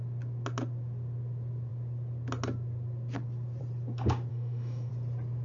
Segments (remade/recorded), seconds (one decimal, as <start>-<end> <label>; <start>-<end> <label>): 0.0-4.3 recorded; 4.3-4.9 remade; 4.9-5.4 recorded